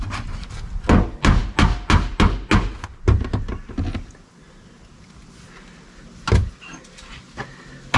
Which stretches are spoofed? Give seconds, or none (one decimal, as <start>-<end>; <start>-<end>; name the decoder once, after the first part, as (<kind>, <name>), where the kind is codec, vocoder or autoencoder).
none